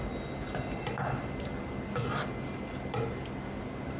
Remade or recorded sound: recorded